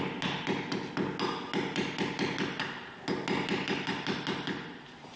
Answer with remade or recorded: recorded